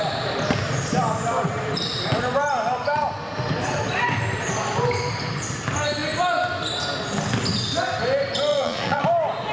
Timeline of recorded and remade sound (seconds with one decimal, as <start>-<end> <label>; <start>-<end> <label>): 0.0-8.5 recorded; 8.5-9.0 remade; 9.0-9.5 recorded